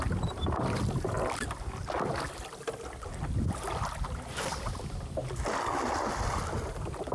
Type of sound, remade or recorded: recorded